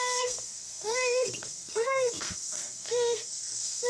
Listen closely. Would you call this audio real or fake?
fake